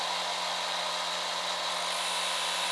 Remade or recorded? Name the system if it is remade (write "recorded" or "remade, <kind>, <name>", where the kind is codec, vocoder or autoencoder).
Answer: recorded